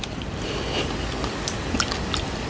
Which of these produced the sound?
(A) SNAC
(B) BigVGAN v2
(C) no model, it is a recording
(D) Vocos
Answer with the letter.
C